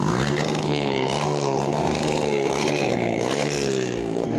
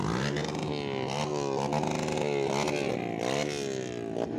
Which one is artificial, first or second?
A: first